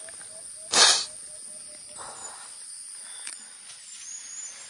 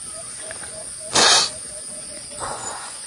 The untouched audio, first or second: first